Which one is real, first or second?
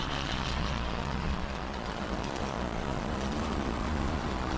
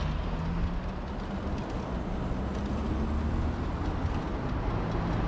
second